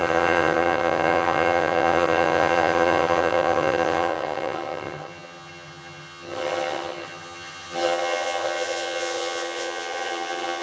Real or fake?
fake